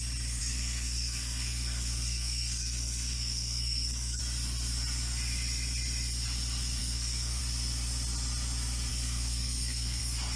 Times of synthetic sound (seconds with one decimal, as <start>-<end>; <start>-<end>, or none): 0.4-4.2; 6.8-7.4; 8.9-10.0